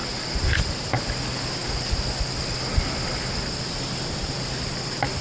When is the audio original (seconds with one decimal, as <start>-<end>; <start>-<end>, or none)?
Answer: 0.0-5.2